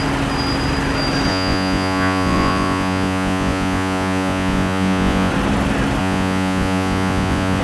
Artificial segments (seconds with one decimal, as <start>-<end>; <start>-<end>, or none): 1.3-5.3; 6.0-7.6